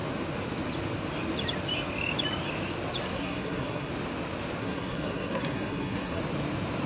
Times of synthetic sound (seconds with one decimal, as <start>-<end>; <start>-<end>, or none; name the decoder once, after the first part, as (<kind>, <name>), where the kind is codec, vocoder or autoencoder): 3.1-3.9 (codec, SNAC); 4.6-6.2